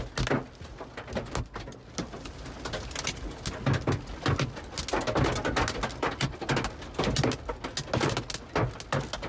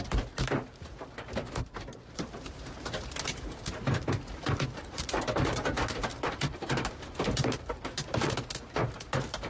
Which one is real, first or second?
first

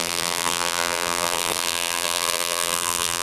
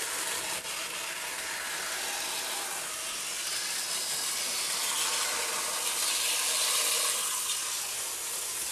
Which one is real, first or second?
second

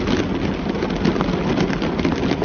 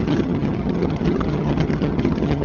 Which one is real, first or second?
first